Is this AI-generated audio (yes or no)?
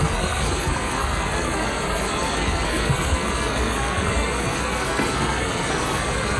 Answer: yes